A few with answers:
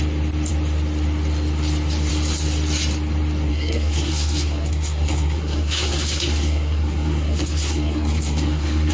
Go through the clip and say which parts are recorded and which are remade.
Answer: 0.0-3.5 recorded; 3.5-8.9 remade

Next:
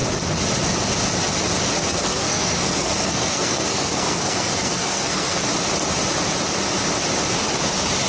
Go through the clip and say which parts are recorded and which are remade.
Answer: 0.0-1.8 recorded; 1.8-5.4 remade; 5.4-8.1 recorded

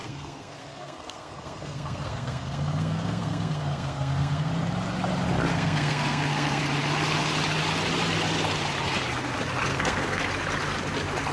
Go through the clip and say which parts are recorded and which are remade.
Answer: 0.0-4.5 remade; 4.5-5.5 recorded; 5.5-6.6 remade; 6.6-9.7 recorded; 9.7-10.2 remade; 10.2-11.3 recorded

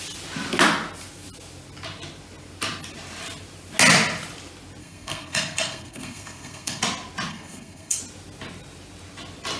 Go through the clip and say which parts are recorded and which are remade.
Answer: 0.0-4.8 recorded; 4.8-6.8 remade; 6.8-7.3 recorded; 7.3-8.0 remade; 8.0-9.6 recorded